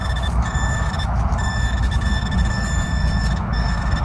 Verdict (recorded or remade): remade